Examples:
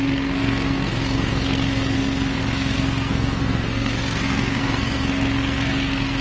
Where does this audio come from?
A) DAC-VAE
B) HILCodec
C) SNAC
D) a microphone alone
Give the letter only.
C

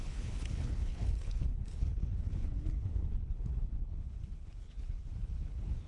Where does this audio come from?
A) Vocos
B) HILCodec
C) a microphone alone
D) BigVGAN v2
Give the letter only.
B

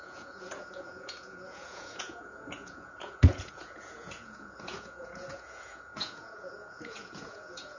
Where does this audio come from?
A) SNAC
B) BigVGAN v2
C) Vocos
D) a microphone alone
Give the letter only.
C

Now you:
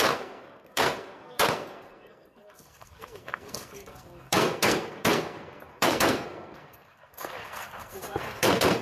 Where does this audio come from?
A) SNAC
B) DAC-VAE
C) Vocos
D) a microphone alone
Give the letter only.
A